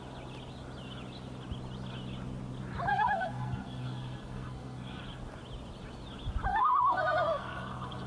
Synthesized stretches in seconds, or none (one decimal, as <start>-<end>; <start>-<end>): 2.9-5.0; 6.5-8.1

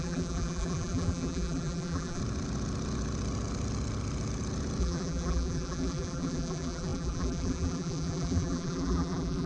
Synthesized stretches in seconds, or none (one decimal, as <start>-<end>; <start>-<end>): 0.0-2.2; 4.8-9.5

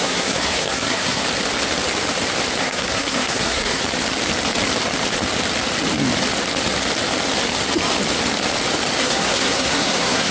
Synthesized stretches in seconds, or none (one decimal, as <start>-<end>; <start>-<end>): 0.0-1.2; 2.6-3.8; 9.0-10.3

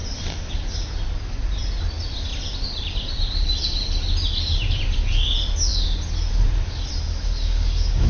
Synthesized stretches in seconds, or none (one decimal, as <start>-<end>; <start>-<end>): 7.1-8.1